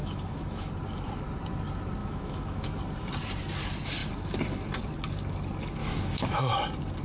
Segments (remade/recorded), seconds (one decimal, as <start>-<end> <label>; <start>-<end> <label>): 0.0-0.7 remade; 0.7-2.0 recorded; 2.0-2.7 remade; 2.7-5.8 recorded; 5.8-6.4 remade; 6.4-7.0 recorded